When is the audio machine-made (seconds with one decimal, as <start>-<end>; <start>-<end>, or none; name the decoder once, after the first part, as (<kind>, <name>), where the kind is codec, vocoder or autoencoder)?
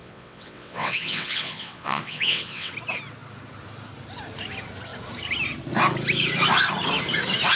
0.0-2.7 (vocoder, WaveNeXt)